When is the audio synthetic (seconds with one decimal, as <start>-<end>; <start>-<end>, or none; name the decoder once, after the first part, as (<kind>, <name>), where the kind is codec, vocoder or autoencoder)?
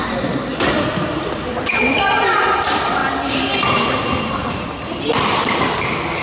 0.0-3.0 (vocoder, BigVGAN v2); 4.2-6.2